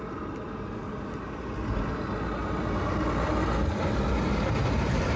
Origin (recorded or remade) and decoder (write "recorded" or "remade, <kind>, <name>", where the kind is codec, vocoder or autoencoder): recorded